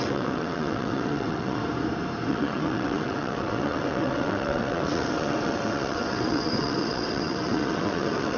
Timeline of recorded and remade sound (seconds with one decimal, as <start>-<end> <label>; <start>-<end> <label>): 0.0-1.6 remade; 1.6-2.3 recorded; 2.3-8.4 remade